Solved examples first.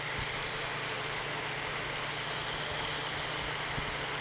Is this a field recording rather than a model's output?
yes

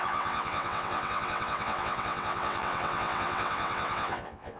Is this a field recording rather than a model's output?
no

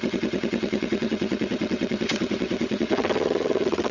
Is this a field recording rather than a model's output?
no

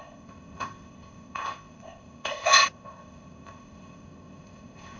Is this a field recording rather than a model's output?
no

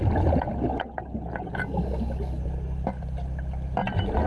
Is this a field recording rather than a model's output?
yes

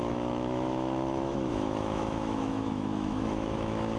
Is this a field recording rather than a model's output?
no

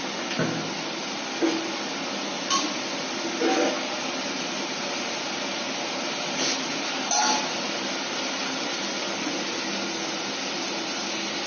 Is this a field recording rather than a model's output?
yes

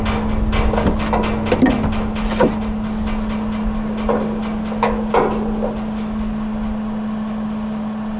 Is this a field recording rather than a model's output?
yes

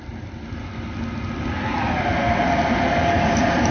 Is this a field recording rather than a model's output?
yes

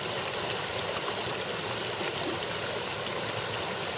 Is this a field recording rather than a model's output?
yes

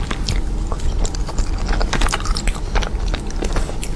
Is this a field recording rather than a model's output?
yes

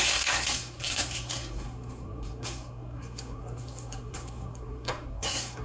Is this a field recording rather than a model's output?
no